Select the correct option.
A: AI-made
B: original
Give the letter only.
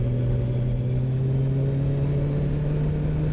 B